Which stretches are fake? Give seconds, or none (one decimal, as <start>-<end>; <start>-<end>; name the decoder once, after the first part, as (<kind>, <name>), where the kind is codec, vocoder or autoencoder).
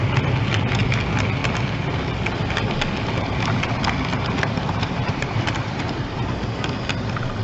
4.1-6.3 (vocoder, BigVGAN v2)